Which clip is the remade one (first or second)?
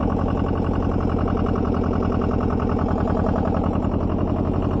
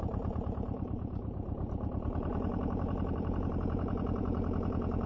second